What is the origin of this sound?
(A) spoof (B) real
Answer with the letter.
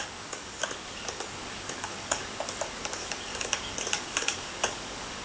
A